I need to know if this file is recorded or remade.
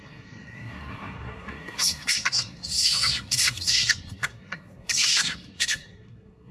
remade